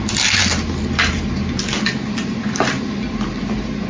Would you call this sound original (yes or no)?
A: yes